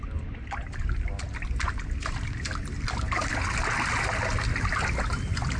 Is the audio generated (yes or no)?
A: no